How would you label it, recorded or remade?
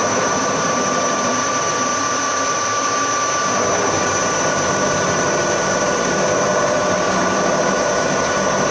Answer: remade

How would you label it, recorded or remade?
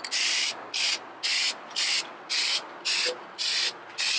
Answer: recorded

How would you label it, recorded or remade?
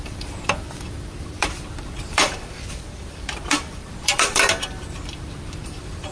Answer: remade